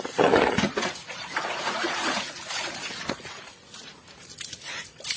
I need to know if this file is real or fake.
fake